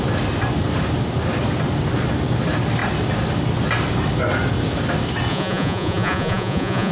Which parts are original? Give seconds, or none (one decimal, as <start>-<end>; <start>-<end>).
0.0-5.3